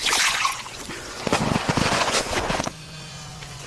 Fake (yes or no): yes